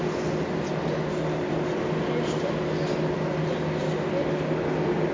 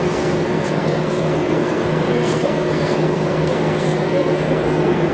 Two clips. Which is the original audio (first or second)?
first